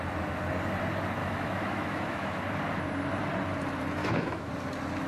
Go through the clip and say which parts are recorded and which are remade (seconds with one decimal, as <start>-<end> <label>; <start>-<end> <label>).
0.0-1.2 recorded; 1.2-2.4 remade; 2.4-4.0 recorded; 4.0-4.5 remade; 4.5-5.1 recorded